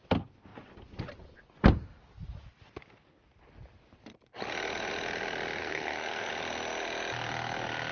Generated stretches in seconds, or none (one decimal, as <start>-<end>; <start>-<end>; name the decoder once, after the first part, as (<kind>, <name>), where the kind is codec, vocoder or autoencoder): 5.6-6.3 (codec, SNAC)